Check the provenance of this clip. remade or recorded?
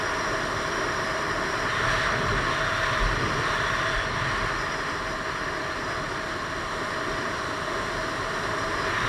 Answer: recorded